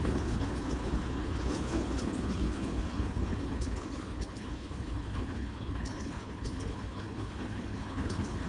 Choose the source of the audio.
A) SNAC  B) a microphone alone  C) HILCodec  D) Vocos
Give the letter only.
C